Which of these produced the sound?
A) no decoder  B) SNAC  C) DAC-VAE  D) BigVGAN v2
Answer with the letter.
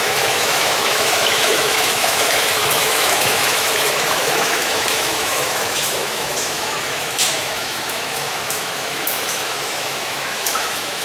C